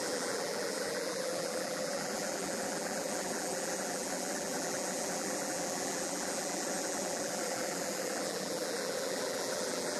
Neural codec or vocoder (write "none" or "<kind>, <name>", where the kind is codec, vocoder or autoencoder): vocoder, BigVGAN v2